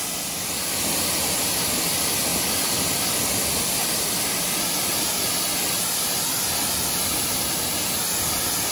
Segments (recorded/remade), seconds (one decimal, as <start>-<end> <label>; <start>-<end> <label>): 0.0-8.7 recorded